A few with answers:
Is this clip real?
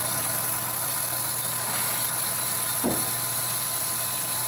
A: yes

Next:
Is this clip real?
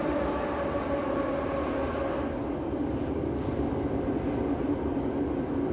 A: yes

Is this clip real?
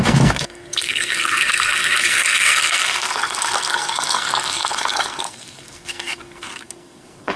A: no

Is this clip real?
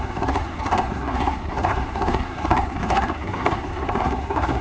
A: no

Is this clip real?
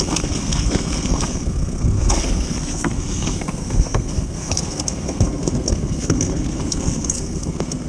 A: no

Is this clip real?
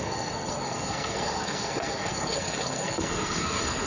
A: no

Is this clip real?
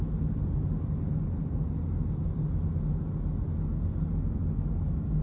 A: yes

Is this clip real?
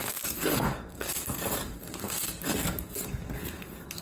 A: no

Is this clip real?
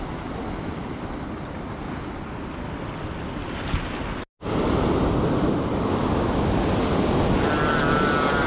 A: yes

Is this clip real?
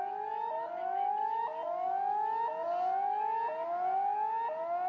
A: yes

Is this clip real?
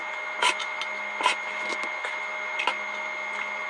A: yes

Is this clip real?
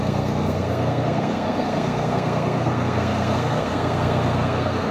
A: no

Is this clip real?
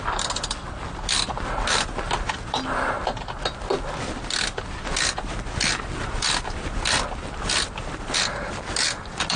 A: yes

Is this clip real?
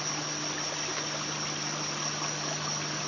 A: yes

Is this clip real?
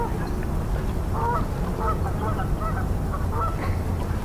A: yes